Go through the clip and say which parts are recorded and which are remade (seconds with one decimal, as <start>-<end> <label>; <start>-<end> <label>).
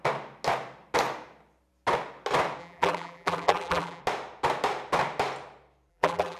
0.0-2.6 recorded; 2.6-4.0 remade; 4.0-5.9 recorded; 5.9-6.4 remade